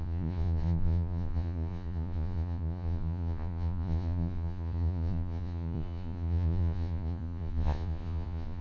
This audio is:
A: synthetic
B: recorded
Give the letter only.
A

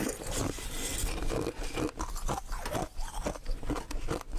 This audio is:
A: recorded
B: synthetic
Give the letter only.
A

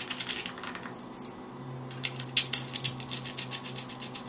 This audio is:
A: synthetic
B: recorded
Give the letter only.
B